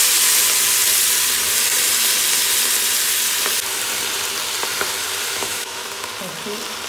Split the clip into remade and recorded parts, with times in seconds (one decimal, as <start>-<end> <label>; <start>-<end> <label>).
0.0-5.4 recorded; 5.4-6.1 remade; 6.1-6.9 recorded